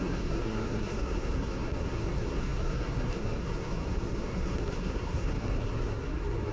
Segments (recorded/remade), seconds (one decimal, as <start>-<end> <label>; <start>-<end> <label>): 0.0-6.5 remade